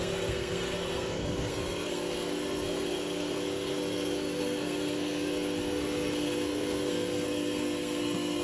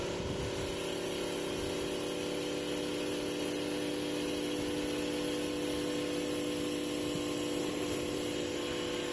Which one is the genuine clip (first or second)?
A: second